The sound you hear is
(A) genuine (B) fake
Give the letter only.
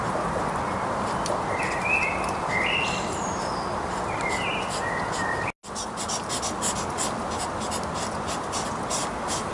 A